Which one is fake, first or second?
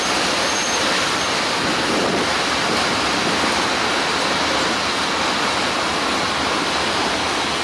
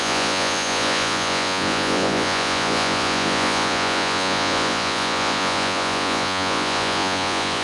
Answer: second